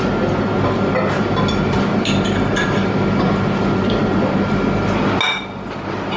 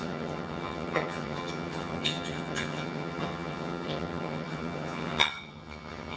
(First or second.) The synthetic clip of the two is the second